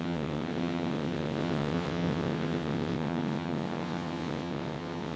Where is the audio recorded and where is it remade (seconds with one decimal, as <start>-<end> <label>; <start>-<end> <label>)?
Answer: 0.0-5.2 remade